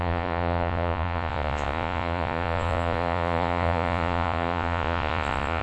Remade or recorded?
remade